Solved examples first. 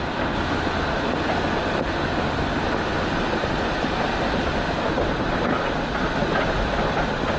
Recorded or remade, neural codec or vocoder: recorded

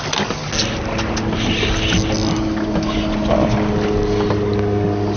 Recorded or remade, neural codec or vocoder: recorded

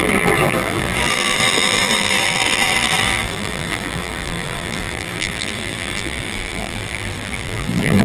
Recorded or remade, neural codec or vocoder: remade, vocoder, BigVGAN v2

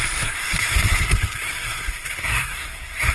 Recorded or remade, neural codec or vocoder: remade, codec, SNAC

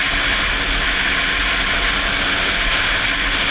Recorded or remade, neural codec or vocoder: recorded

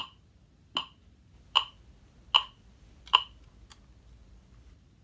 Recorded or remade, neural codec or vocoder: recorded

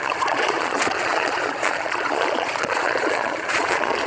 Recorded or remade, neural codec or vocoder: remade, vocoder, Vocos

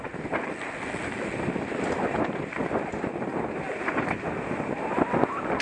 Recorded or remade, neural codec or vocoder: recorded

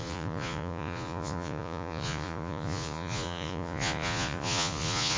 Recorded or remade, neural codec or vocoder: remade, vocoder, Vocos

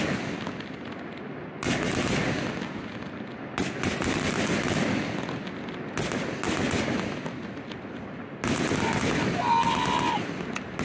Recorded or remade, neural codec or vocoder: recorded